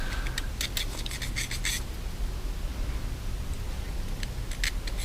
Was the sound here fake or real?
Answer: real